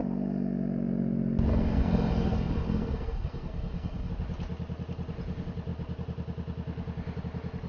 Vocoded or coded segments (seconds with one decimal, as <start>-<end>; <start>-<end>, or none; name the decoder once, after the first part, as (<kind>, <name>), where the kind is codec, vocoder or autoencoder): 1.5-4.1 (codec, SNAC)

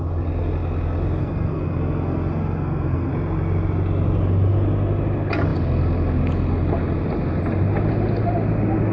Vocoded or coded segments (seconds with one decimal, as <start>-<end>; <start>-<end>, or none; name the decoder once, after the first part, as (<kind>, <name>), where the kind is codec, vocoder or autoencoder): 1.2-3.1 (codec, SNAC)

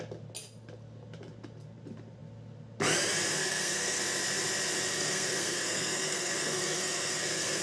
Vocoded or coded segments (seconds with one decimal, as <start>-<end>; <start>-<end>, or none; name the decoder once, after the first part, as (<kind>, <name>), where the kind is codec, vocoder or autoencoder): 3.4-4.0 (codec, SNAC); 4.9-7.6